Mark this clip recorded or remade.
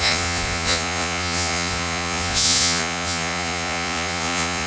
remade